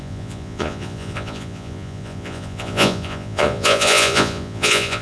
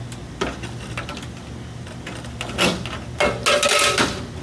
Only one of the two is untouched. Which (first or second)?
second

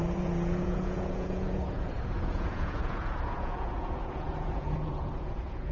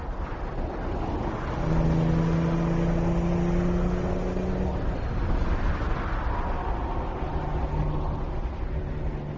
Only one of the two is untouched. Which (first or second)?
second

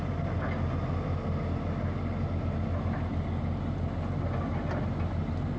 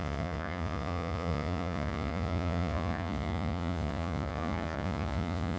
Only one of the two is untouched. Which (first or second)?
first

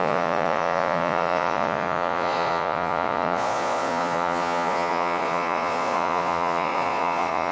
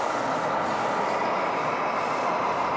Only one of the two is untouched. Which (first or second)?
second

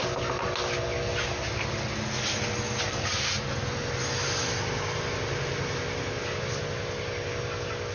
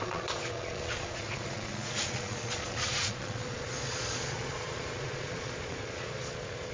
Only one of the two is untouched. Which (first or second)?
first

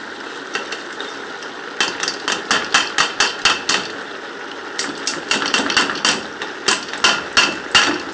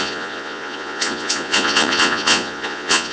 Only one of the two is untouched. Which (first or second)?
first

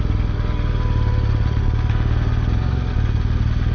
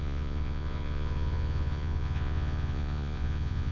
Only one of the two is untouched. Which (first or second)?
first